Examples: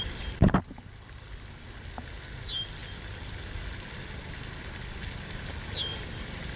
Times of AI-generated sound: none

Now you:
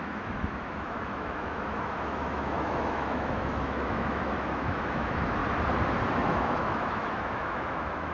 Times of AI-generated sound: 0.0-5.4 (autoencoder, DAC-VAE); 6.1-8.1

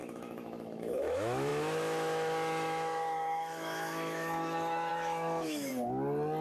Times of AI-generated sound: 0.0-5.7 (autoencoder, DAC-VAE)

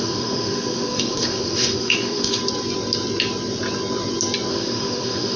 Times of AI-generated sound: 0.0-2.4 (autoencoder, DAC-VAE); 4.5-5.4

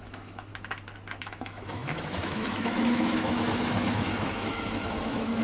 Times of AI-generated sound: 0.0-0.5 (autoencoder, DAC-VAE); 1.2-5.4

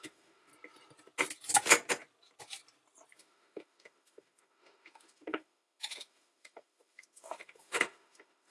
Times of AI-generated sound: 0.0-0.5 (autoencoder, DAC-VAE); 3.2-8.5

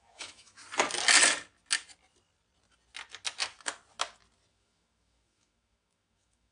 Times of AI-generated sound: 0.0-0.6 (autoencoder, DAC-VAE); 4.5-6.5

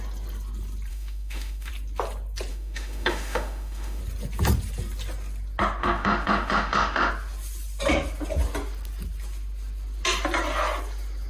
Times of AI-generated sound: 0.9-1.7 (autoencoder, DAC-VAE); 2.5-4.0; 5.8-7.1